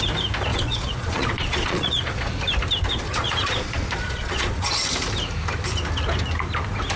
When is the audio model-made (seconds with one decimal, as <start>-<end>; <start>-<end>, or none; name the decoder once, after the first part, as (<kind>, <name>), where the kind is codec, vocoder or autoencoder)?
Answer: 0.5-2.3 (vocoder, Vocos); 2.9-4.7